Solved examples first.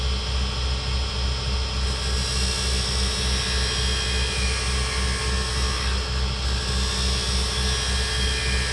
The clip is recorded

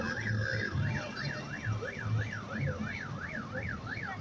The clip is recorded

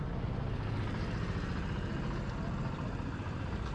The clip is recorded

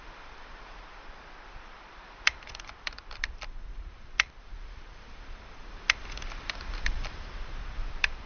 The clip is remade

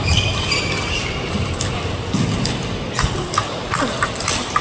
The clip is recorded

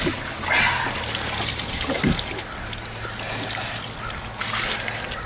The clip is recorded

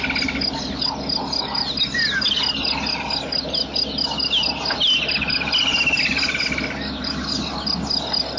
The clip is recorded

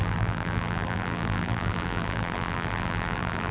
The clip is remade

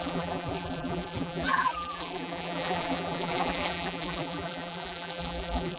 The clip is remade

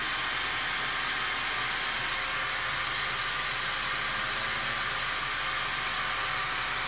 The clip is recorded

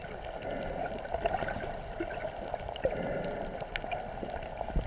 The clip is recorded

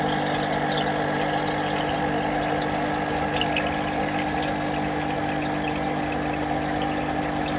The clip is recorded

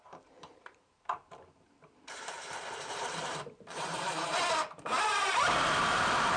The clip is remade